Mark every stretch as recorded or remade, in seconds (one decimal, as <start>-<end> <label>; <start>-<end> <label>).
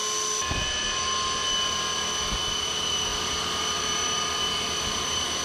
0.0-2.6 recorded; 2.6-5.4 remade